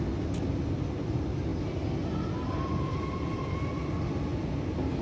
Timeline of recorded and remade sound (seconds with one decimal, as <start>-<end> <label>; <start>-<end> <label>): 0.0-5.0 recorded